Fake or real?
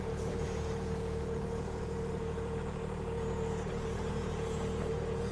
fake